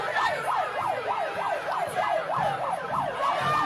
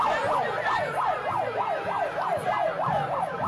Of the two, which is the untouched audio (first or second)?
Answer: second